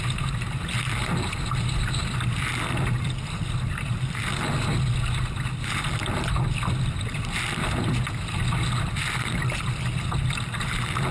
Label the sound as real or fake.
real